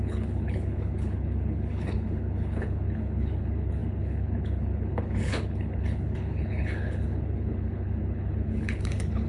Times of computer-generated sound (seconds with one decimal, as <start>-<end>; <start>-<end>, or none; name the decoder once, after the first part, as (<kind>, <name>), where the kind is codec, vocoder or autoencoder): 0.0-9.3 (codec, HILCodec)